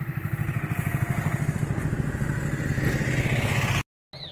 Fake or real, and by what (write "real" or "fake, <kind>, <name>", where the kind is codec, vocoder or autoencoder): real